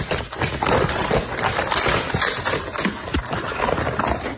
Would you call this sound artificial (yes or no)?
no